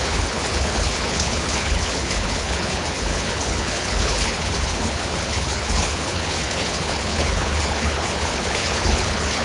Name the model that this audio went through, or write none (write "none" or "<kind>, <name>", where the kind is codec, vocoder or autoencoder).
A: codec, HILCodec